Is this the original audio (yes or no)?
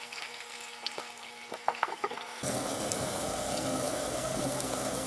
no